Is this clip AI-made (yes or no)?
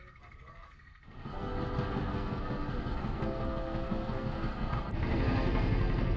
yes